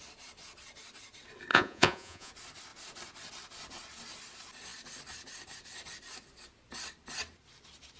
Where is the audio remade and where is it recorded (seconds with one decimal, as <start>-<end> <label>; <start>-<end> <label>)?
0.0-1.5 recorded; 1.5-2.3 remade; 2.3-8.0 recorded